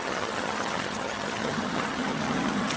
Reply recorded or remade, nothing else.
remade